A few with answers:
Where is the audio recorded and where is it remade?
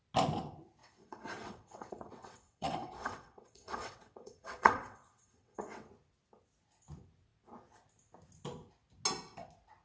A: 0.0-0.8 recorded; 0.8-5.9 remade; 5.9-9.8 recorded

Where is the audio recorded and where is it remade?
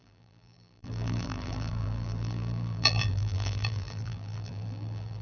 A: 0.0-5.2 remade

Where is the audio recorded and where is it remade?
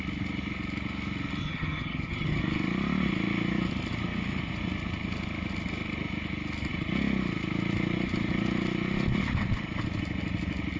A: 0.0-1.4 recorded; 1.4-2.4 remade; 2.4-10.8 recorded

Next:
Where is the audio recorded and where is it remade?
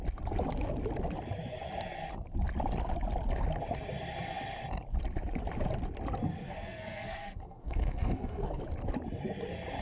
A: 0.0-6.3 recorded; 6.3-8.6 remade; 8.6-9.8 recorded